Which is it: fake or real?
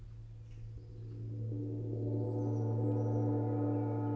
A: real